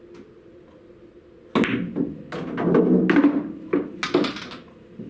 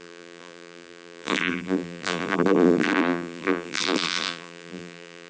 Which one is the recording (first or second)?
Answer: first